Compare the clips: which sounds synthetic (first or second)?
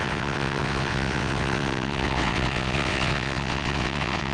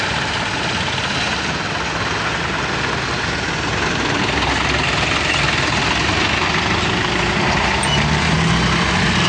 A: first